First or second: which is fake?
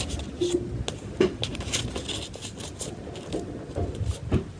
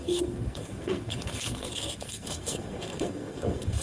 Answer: second